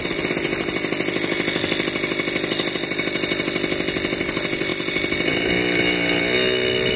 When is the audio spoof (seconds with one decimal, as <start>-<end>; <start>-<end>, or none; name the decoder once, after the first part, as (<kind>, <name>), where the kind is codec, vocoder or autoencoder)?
none